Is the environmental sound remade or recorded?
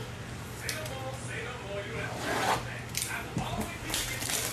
recorded